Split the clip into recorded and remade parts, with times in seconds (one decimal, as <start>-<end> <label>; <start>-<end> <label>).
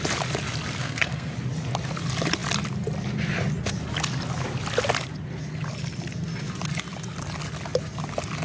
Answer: 0.0-0.8 recorded; 0.8-1.3 remade; 1.3-8.4 recorded